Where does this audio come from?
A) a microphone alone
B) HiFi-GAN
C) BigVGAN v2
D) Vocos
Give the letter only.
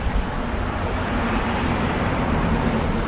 C